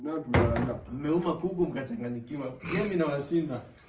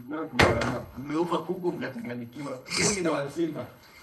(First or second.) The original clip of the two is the first